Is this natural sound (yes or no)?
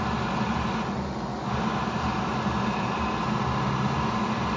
yes